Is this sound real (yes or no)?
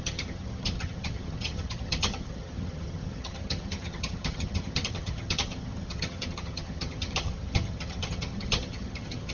no